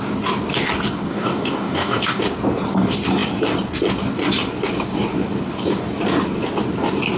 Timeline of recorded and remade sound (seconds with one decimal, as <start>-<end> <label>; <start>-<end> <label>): 0.0-1.1 recorded; 1.1-2.2 remade; 2.2-7.2 recorded